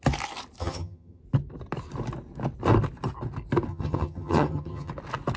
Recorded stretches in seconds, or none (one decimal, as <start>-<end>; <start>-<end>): 0.0-0.6; 1.2-3.7; 4.9-5.4